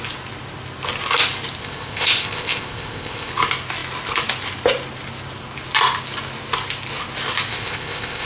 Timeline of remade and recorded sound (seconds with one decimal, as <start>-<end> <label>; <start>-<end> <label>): 0.0-1.6 recorded; 1.6-3.3 remade; 3.3-7.5 recorded; 7.5-8.3 remade